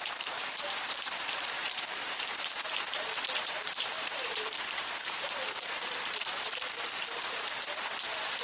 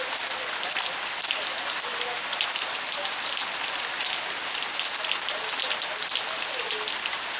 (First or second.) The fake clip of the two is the first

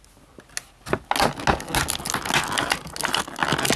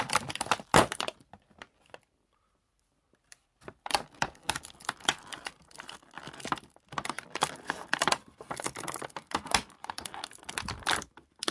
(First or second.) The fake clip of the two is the second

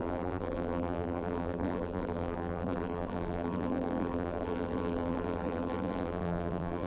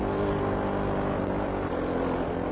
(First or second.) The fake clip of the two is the first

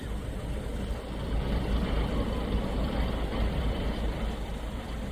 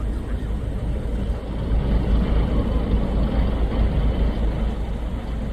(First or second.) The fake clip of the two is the first